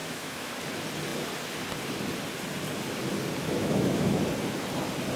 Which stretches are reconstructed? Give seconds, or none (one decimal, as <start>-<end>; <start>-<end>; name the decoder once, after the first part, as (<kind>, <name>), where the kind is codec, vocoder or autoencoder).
0.0-0.5 (autoencoder, DAC-VAE); 3.4-4.2